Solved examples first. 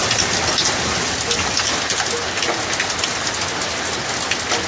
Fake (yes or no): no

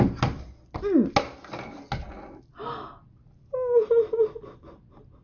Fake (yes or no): no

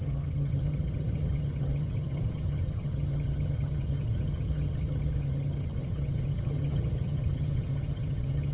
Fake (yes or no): yes